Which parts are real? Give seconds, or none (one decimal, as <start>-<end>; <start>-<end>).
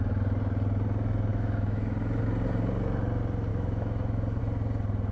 0.0-1.3; 2.2-3.5; 4.4-5.1